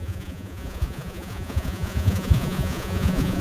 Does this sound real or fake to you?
fake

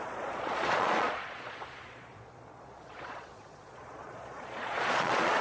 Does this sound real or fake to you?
fake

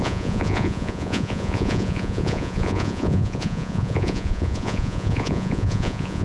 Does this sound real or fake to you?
fake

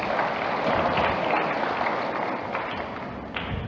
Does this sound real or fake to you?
real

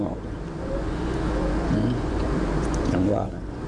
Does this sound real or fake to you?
fake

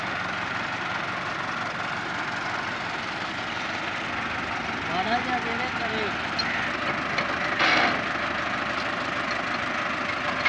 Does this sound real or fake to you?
real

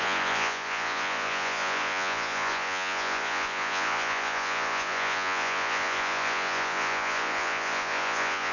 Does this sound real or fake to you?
fake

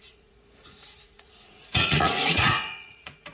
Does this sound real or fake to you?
fake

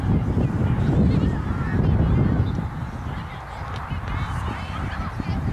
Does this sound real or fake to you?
real